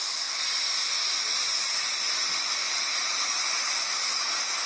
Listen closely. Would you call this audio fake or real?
real